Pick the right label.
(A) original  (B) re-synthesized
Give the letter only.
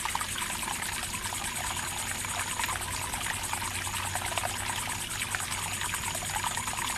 A